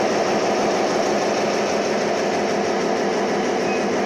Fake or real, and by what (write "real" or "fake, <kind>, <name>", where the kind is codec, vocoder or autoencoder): real